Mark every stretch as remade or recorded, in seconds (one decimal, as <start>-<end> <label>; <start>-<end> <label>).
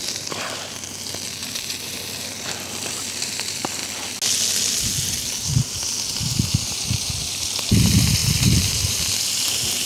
0.0-3.8 remade; 3.8-6.2 recorded; 6.2-9.9 remade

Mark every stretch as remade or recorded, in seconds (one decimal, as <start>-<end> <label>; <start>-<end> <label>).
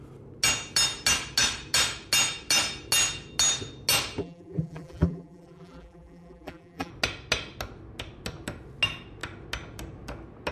0.0-4.2 recorded; 4.2-6.9 remade; 6.9-10.5 recorded